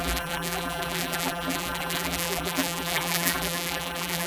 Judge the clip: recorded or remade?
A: remade